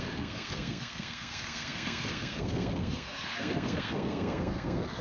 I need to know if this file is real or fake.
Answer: fake